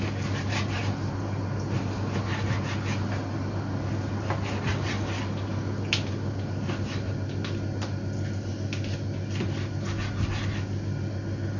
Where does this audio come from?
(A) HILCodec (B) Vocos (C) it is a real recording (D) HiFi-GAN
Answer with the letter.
C